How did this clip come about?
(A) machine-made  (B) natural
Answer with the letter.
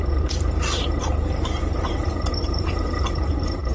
A